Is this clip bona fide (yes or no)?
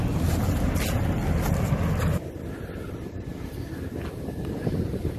yes